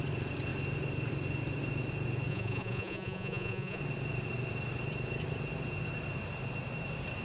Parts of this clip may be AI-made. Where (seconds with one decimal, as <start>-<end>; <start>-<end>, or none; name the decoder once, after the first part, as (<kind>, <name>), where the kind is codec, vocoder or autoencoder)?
2.3-3.8 (vocoder, Vocos)